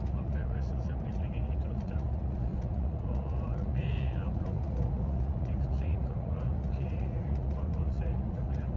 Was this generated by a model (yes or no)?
yes